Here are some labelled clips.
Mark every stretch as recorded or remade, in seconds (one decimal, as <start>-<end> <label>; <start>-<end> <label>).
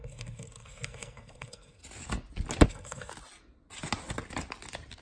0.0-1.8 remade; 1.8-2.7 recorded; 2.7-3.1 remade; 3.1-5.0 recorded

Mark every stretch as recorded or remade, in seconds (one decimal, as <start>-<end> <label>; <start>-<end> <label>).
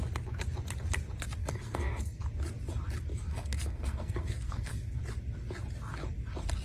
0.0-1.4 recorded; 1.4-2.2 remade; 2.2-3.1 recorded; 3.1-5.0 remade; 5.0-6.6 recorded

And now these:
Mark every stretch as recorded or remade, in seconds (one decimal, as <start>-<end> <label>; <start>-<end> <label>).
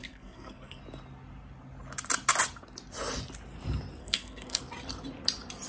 0.0-0.8 remade; 0.8-4.0 recorded; 4.0-4.6 remade; 4.6-5.7 recorded